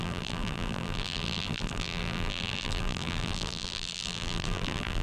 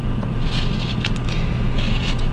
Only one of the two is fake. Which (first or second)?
first